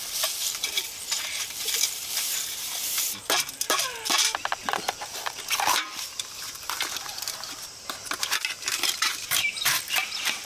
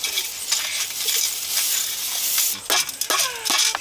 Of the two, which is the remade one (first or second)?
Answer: first